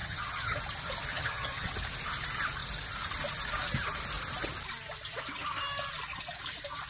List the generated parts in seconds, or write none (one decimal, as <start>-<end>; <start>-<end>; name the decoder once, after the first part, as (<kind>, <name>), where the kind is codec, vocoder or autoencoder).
0.0-0.6 (vocoder, HiFi-GAN); 1.1-1.7